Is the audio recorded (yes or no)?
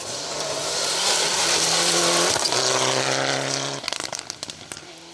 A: yes